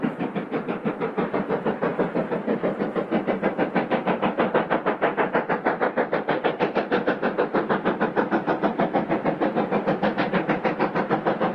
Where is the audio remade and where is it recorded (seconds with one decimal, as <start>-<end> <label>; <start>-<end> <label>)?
0.0-11.5 recorded